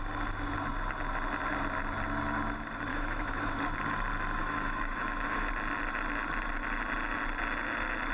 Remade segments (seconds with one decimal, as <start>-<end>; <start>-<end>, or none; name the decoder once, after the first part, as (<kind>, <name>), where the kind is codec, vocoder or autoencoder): 2.9-3.5 (autoencoder, DAC-VAE); 4.4-5.5